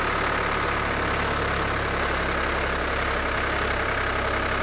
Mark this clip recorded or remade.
recorded